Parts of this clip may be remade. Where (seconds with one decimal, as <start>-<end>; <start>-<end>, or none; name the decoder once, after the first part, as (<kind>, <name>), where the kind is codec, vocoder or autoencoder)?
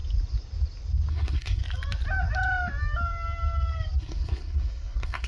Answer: 1.1-1.6 (codec, SNAC); 4.0-5.3